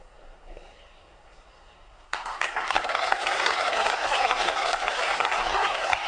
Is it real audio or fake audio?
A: fake